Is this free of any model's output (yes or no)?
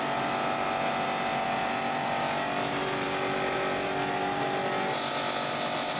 yes